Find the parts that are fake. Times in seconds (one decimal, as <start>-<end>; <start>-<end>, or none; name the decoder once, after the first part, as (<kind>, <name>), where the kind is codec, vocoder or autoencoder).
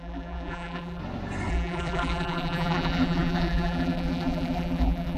0.0-1.0 (vocoder, BigVGAN v2); 1.5-5.2